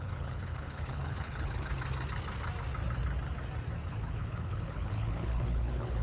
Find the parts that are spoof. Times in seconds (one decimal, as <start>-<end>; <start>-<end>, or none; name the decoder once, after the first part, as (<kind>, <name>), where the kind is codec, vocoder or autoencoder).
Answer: 0.0-1.7 (codec, HILCodec); 3.9-6.0